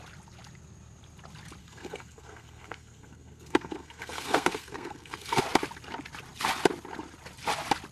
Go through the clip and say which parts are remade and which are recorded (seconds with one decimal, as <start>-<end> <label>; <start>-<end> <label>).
0.0-1.6 recorded; 1.6-5.4 remade; 5.4-7.9 recorded